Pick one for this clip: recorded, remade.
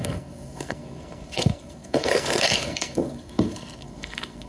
remade